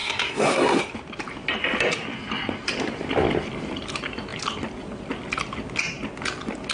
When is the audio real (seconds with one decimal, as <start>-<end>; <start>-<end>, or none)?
0.8-6.7